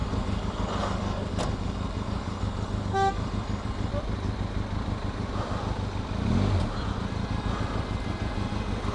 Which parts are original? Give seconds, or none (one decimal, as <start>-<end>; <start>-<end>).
3.9-8.9